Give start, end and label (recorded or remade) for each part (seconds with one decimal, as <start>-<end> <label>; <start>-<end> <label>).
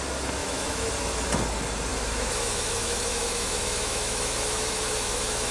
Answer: 0.0-0.4 recorded; 0.4-0.9 remade; 0.9-1.9 recorded; 1.9-5.5 remade